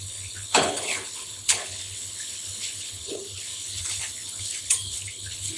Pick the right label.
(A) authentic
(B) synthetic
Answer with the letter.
B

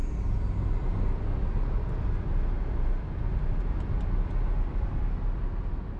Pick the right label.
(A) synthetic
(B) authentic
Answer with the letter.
B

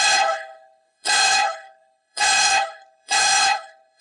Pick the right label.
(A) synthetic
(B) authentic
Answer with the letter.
A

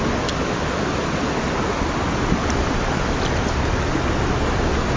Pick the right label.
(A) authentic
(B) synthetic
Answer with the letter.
A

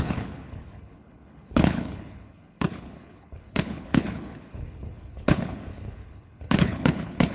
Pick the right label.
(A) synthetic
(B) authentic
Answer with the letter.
A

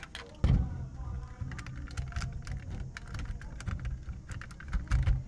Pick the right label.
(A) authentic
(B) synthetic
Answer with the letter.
A